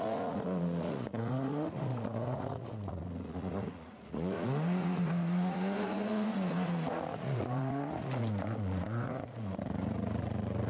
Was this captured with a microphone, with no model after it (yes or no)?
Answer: no